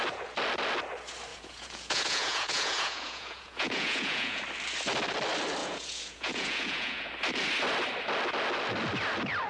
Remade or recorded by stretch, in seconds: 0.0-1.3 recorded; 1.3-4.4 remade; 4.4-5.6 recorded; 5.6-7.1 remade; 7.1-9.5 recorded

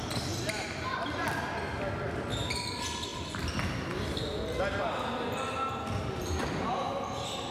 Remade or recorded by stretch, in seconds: 0.0-7.5 recorded

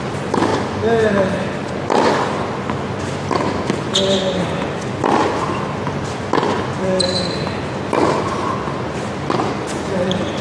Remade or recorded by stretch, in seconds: 0.0-10.4 recorded

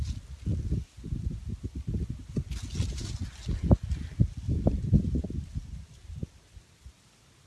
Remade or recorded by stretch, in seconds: 0.0-7.5 recorded

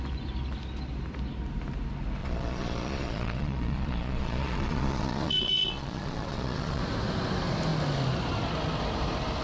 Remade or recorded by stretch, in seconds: 0.0-2.2 recorded; 2.2-6.8 remade; 6.8-9.4 recorded

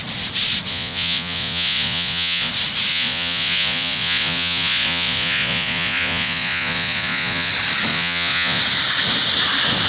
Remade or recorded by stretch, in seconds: 0.0-0.7 recorded; 0.7-2.5 remade; 2.5-2.9 recorded; 2.9-7.5 remade; 7.5-7.9 recorded; 7.9-8.6 remade; 8.6-9.9 recorded

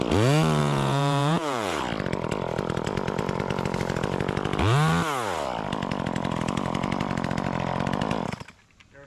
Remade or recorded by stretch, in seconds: 0.0-0.6 recorded; 0.6-1.8 remade; 1.8-9.1 recorded